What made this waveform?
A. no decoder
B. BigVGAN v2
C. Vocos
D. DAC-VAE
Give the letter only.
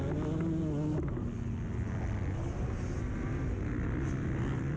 A